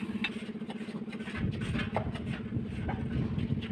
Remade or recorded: recorded